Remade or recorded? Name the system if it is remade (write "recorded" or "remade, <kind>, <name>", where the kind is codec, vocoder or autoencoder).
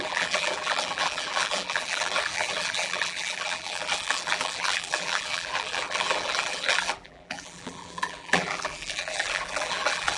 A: remade, vocoder, BigVGAN v2